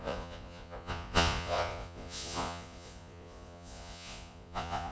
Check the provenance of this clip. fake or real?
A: fake